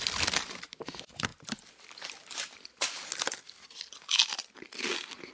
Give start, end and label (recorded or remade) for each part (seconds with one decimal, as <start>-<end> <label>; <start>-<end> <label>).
0.0-5.3 recorded